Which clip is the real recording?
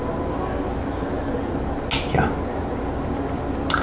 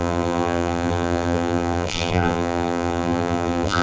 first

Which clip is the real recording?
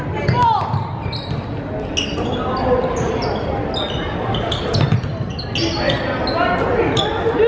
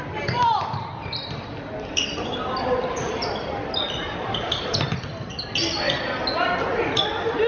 first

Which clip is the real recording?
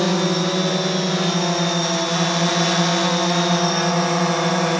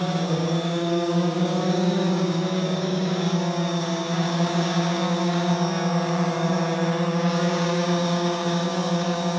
first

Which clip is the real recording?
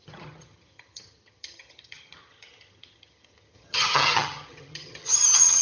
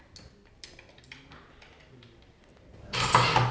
second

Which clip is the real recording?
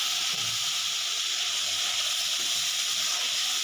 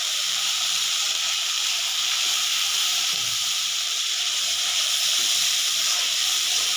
first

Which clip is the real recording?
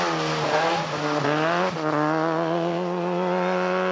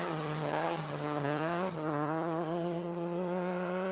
first